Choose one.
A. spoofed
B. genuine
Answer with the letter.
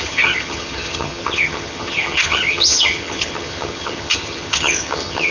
A